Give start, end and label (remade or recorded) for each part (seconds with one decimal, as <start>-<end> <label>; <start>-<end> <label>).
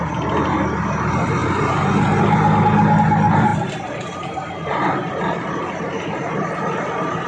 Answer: 0.0-3.5 recorded; 3.5-5.7 remade; 5.7-7.3 recorded